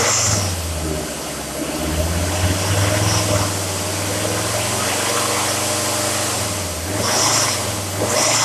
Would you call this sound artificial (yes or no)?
no